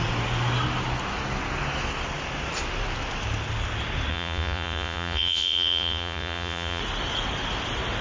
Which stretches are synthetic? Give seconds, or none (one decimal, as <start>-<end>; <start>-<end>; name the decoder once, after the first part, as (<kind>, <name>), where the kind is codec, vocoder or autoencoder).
4.1-6.8 (vocoder, Vocos)